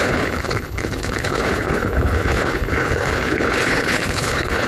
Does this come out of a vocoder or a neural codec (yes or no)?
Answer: yes